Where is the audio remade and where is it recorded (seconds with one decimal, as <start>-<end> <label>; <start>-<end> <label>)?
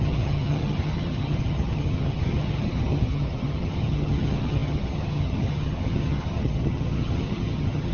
0.0-7.9 remade